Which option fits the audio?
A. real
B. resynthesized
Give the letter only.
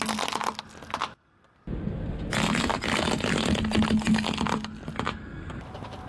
A